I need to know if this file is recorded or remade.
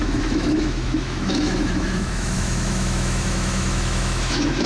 remade